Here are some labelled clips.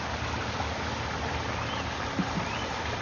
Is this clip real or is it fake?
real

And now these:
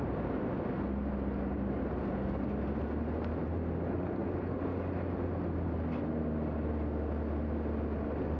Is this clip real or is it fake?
real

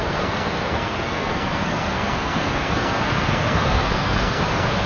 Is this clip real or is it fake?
fake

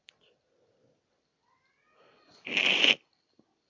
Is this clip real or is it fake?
real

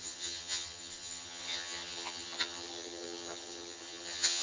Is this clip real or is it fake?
fake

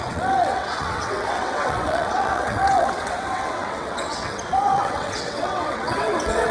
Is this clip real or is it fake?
fake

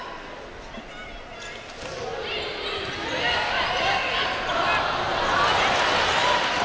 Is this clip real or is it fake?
real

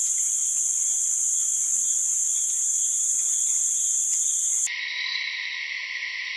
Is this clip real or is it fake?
real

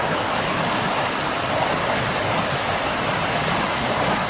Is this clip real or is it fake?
real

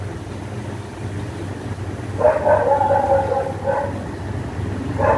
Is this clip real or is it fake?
real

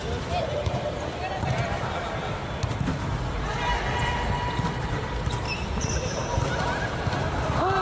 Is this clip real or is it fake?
real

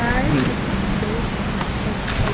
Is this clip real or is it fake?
real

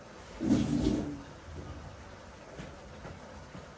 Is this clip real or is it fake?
real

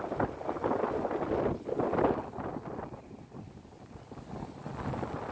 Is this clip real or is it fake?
real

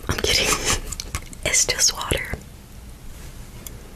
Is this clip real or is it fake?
real